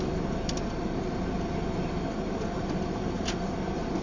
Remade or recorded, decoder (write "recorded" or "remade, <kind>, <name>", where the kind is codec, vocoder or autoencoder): recorded